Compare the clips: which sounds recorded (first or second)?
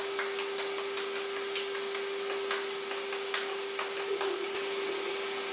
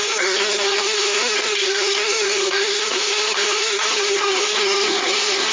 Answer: first